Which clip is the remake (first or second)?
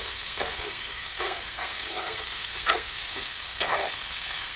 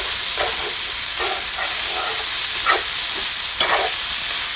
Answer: first